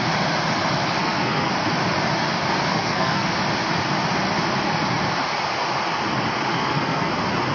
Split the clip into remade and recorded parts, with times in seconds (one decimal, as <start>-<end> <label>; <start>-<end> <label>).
0.0-1.0 recorded; 1.0-1.5 remade; 1.5-2.7 recorded; 2.7-3.3 remade; 3.3-6.5 recorded; 6.5-7.1 remade; 7.1-7.5 recorded